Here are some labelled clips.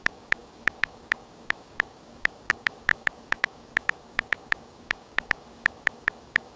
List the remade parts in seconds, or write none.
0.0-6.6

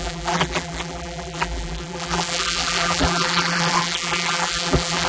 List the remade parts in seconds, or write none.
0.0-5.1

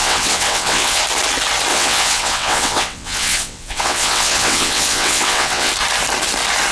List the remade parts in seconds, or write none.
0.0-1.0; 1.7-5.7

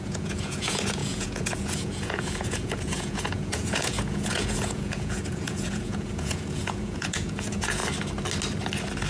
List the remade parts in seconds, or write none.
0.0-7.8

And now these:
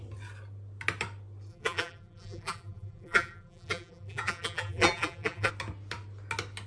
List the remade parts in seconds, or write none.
1.5-5.5

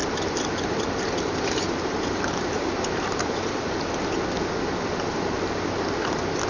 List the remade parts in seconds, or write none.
0.0-3.9

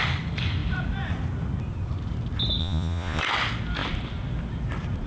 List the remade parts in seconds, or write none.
2.6-3.2

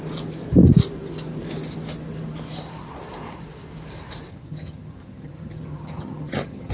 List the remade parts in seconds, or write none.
4.3-6.7